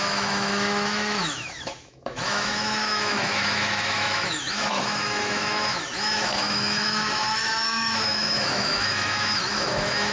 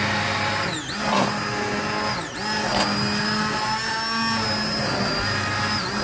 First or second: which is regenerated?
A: first